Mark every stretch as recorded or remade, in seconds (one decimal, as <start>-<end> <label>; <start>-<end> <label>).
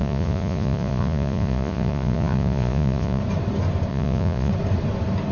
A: 0.0-3.2 remade; 3.2-3.9 recorded; 3.9-4.5 remade; 4.5-5.3 recorded